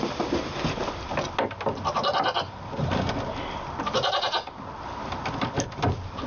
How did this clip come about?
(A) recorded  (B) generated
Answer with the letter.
A